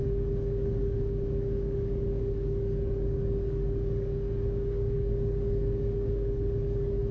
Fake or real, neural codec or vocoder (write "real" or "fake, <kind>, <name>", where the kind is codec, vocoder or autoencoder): fake, codec, DAC